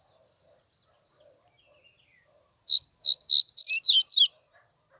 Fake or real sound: real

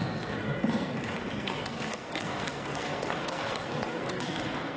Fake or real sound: fake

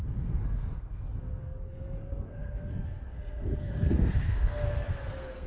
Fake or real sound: fake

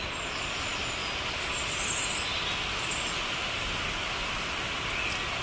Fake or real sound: real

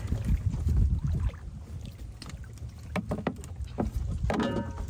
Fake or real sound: real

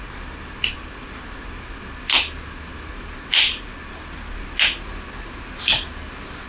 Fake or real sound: real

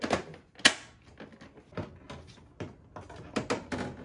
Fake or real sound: real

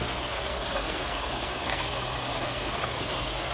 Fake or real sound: fake